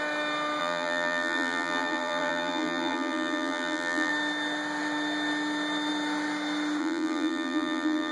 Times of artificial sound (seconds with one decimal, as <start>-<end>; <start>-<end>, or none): 0.6-4.1; 6.8-8.1